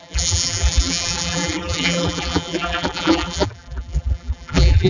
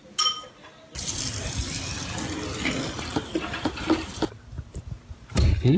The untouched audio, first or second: second